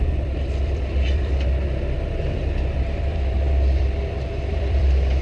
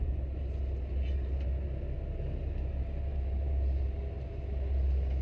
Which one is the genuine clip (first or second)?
second